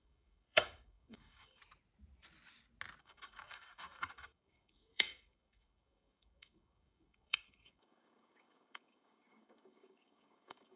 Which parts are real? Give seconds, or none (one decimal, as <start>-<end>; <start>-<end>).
1.6-3.0